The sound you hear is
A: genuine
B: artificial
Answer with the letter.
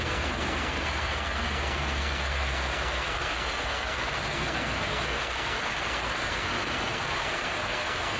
B